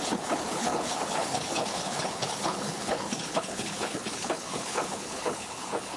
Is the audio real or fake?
fake